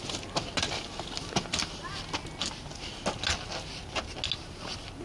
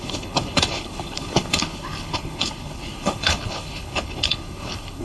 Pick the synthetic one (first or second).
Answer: second